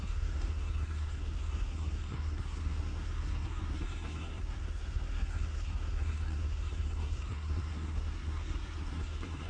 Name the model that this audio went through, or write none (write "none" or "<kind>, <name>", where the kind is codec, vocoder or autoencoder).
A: codec, SNAC